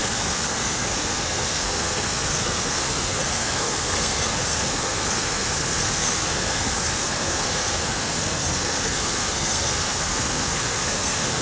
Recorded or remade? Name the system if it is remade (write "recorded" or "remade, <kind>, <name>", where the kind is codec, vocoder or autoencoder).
remade, codec, SNAC